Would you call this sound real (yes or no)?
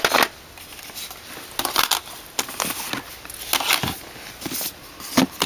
yes